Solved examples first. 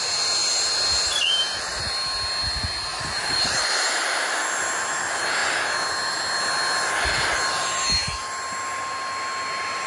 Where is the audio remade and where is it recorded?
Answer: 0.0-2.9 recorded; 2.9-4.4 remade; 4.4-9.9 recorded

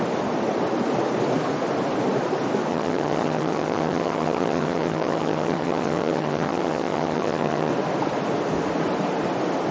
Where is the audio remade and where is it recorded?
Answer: 0.0-2.7 recorded; 2.7-7.7 remade; 7.7-9.7 recorded

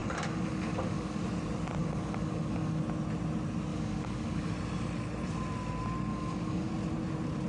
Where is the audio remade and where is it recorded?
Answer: 0.0-1.2 remade; 1.2-1.8 recorded; 1.8-2.8 remade; 2.8-3.7 recorded; 3.7-4.5 remade; 4.5-6.1 recorded; 6.1-6.7 remade; 6.7-7.5 recorded

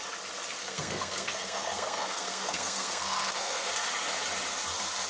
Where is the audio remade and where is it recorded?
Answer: 0.0-0.6 recorded; 0.6-3.7 remade; 3.7-5.1 recorded

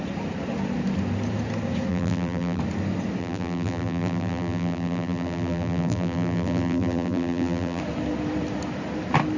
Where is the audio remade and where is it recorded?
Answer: 0.0-1.9 recorded; 1.9-2.6 remade; 2.6-3.2 recorded; 3.2-7.8 remade; 7.8-9.4 recorded

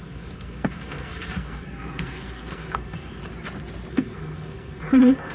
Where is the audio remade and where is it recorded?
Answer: 0.0-3.2 remade; 3.2-3.9 recorded; 3.9-5.3 remade